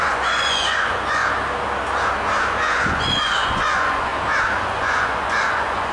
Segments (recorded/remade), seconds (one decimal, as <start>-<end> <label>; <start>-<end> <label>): 0.0-1.2 remade; 1.2-2.7 recorded; 2.7-4.1 remade; 4.1-4.6 recorded; 4.6-5.9 remade